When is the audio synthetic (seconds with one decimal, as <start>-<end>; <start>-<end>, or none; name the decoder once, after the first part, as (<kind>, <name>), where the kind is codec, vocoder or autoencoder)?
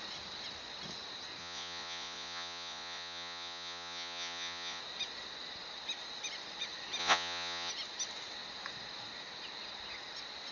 1.4-4.8 (vocoder, Vocos); 7.0-7.7